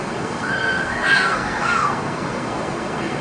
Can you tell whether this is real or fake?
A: fake